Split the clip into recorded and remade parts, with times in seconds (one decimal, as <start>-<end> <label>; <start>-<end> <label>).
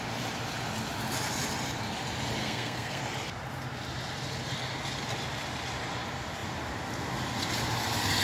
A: 0.0-2.4 recorded; 2.4-3.0 remade; 3.0-8.2 recorded